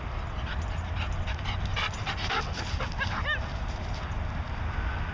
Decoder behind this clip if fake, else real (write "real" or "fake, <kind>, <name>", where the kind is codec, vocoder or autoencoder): real